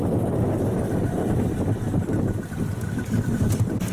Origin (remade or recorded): recorded